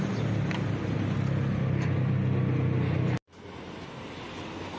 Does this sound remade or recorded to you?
recorded